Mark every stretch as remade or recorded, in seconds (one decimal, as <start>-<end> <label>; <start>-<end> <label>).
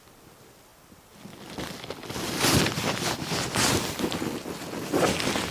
0.0-5.5 recorded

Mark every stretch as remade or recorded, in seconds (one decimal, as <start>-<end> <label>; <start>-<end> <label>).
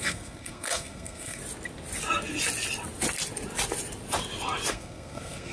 0.0-1.4 remade; 1.4-4.7 recorded; 4.7-5.5 remade